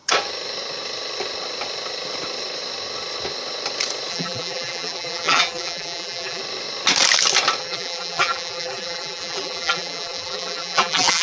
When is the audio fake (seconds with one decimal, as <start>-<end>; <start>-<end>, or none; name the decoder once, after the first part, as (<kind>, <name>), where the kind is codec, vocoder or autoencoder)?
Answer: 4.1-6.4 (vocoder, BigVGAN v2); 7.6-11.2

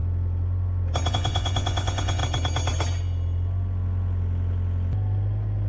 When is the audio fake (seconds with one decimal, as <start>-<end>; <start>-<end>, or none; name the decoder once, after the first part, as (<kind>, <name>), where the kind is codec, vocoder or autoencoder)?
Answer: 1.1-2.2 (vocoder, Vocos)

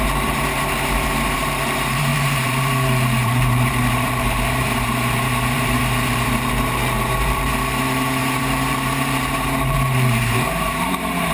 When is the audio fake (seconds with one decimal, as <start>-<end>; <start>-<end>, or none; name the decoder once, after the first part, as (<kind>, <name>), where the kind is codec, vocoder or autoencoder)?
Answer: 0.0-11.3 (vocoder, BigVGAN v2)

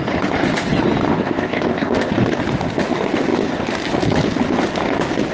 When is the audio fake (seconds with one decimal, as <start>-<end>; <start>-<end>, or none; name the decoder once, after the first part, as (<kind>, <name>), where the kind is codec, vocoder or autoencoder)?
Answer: 1.1-2.1 (codec, ZipCodec)

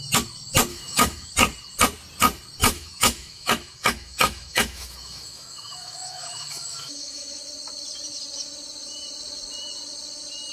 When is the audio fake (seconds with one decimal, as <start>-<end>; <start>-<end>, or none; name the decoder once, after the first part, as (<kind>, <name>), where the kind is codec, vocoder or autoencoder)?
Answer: 0.7-1.3 (autoencoder, DAC-VAE); 2.6-7.4

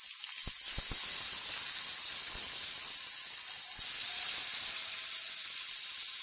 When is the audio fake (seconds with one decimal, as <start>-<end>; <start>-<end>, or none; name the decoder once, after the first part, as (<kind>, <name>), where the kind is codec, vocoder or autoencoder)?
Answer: none

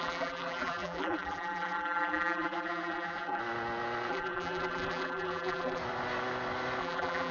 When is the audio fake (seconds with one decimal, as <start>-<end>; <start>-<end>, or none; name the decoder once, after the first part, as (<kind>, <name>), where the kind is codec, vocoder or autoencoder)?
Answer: 0.0-3.4 (vocoder, BigVGAN v2); 4.1-5.8; 6.8-7.3